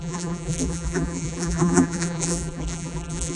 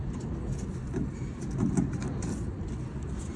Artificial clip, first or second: first